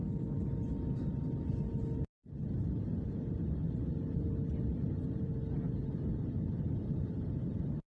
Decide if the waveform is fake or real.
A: real